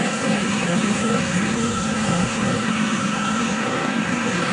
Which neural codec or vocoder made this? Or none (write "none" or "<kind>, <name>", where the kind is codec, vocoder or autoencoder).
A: codec, SNAC